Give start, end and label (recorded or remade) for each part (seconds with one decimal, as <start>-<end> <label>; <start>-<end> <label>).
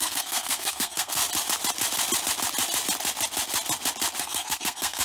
0.0-1.2 remade; 1.2-4.2 recorded; 4.2-5.0 remade